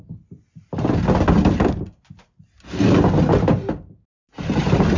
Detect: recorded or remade recorded